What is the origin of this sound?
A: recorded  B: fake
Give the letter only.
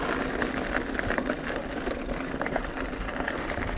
A